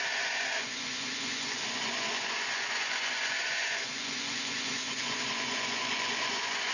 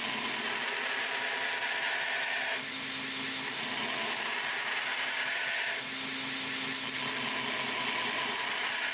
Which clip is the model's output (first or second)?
first